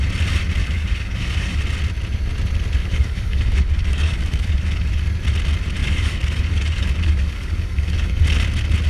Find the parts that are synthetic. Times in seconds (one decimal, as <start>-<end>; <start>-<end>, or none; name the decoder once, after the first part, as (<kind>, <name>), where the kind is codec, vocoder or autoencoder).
0.6-1.6 (codec, DAC); 2.8-4.9; 5.8-8.2